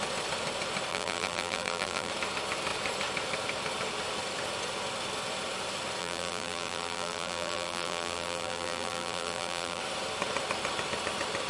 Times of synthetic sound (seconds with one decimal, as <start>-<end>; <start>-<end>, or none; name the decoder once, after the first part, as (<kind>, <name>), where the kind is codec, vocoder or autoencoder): 0.9-2.1 (vocoder, BigVGAN v2); 6.0-9.8